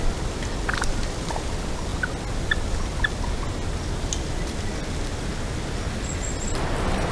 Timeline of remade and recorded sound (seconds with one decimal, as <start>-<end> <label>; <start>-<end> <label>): 0.0-7.1 recorded

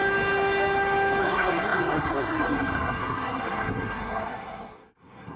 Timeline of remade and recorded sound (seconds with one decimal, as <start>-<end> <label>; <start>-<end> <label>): 0.0-1.2 recorded; 1.2-5.4 remade

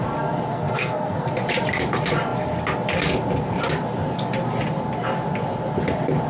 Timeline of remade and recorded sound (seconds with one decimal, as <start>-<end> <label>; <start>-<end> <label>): 0.0-0.5 recorded; 0.5-1.3 remade; 1.3-6.3 recorded

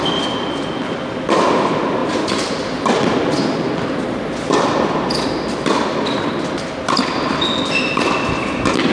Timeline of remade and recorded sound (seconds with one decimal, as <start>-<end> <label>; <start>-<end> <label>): 0.0-2.0 recorded; 2.0-6.3 remade; 6.3-8.9 recorded

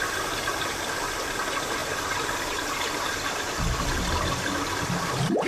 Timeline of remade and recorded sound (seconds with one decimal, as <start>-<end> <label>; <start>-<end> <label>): 0.0-1.8 recorded; 1.8-3.5 remade; 3.5-5.5 recorded